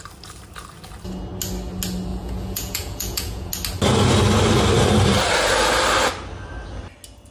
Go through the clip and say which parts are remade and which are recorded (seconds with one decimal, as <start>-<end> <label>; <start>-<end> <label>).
0.0-2.1 recorded; 2.1-3.5 remade; 3.5-7.3 recorded